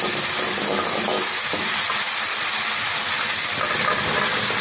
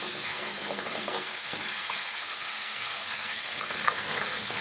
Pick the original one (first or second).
first